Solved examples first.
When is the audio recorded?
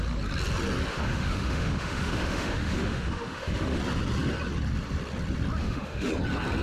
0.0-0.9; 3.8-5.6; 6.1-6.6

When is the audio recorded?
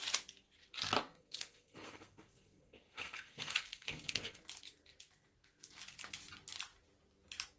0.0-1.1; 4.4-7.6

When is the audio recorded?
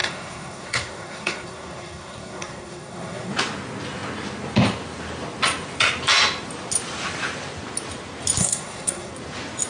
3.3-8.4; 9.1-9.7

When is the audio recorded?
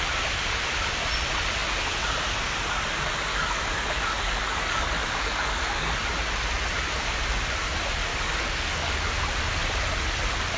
0.0-3.3; 5.9-8.1; 9.1-10.6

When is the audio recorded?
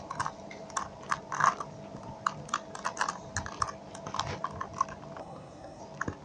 0.0-5.2; 5.8-6.2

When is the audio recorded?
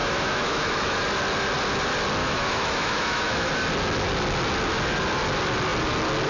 1.0-2.2; 3.5-6.3